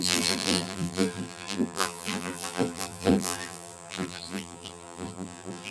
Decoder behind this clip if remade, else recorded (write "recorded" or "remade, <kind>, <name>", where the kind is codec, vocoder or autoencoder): remade, vocoder, BigVGAN v2